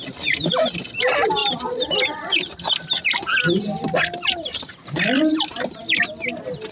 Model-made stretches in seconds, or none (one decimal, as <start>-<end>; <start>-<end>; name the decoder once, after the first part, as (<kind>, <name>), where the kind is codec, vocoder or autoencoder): 1.4-2.7 (vocoder, BigVGAN v2); 4.8-6.1